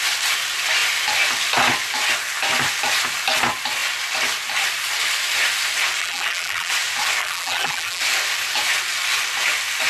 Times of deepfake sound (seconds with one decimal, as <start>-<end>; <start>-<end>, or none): 6.0-6.7; 7.2-8.0